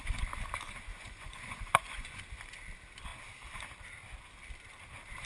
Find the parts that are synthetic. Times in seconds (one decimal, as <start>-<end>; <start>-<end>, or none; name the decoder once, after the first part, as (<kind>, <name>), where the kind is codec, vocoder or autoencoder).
0.9-2.2 (vocoder, Vocos)